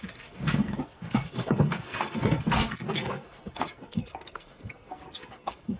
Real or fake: fake